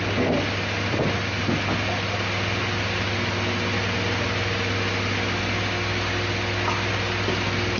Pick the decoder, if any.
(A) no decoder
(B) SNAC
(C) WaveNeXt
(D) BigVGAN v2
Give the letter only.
A